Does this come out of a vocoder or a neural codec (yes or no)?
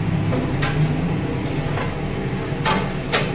no